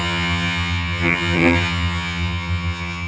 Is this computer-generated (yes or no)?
yes